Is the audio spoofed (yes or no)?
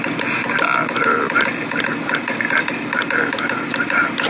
no